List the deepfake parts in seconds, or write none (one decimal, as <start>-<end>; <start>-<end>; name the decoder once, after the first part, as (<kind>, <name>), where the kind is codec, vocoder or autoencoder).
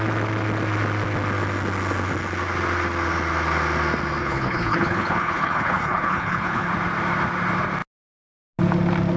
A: 4.2-6.7 (codec, HILCodec)